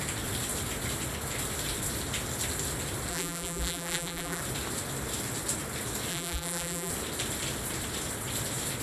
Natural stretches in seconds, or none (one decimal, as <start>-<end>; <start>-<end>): 0.0-3.1; 4.4-6.1; 6.9-8.8